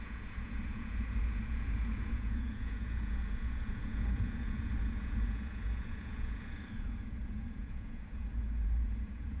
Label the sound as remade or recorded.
remade